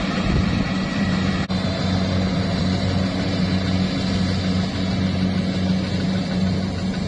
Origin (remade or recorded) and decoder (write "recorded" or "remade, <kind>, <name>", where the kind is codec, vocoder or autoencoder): recorded